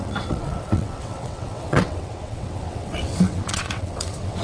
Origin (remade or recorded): remade